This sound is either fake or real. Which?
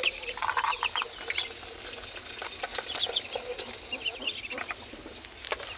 real